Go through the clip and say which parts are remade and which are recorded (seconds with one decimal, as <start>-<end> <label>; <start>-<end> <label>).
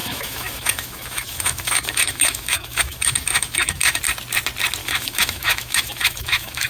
0.0-4.0 remade; 4.0-4.8 recorded; 4.8-6.7 remade